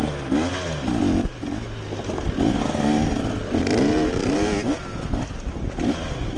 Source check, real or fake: real